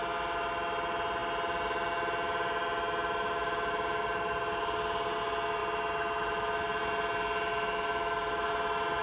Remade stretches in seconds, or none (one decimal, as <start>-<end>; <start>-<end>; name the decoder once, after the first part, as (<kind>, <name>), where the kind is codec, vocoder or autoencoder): none